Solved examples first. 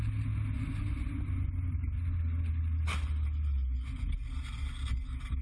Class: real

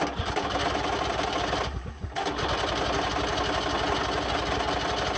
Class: real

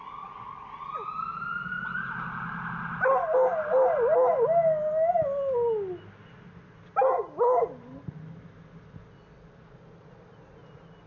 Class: real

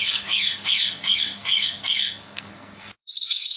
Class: fake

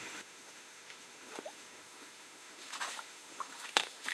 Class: fake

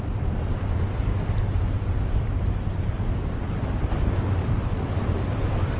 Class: fake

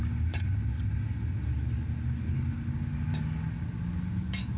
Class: real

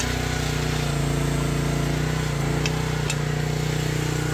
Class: real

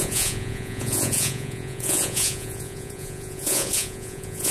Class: fake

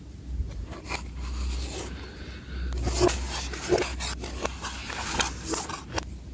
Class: real